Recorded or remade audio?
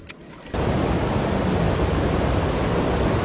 recorded